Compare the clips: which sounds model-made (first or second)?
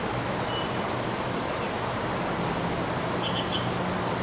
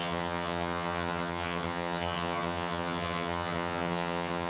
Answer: second